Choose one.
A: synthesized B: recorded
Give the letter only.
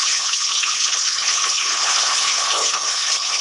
A